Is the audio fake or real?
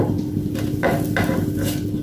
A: real